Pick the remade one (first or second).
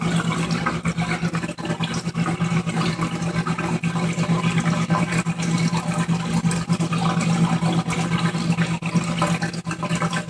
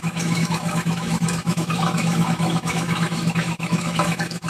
second